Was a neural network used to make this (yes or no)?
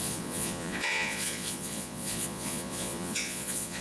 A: yes